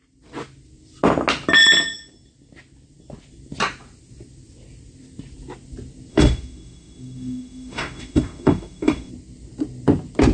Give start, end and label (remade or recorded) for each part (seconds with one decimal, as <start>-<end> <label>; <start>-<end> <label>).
0.0-6.1 recorded; 6.1-9.1 remade; 9.1-10.3 recorded